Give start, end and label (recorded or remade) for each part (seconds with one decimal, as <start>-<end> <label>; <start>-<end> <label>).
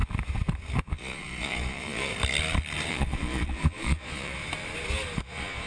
0.0-0.8 recorded; 0.8-2.1 remade; 2.1-2.9 recorded; 2.9-4.4 remade; 4.4-5.2 recorded; 5.2-5.7 remade